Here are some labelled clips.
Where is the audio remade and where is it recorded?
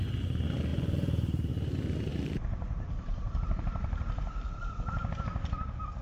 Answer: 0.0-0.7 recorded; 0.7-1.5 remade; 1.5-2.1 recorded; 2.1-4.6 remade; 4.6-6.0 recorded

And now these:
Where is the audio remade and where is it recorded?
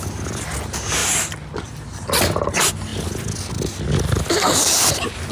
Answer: 0.0-1.0 recorded; 1.0-1.9 remade; 1.9-5.3 recorded